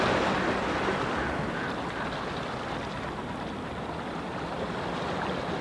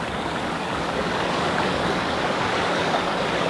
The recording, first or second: first